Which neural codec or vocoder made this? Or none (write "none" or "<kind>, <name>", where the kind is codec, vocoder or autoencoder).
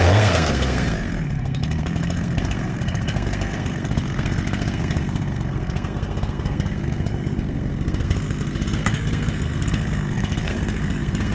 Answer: codec, SNAC